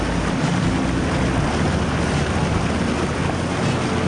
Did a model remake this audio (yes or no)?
no